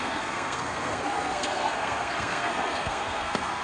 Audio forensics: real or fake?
fake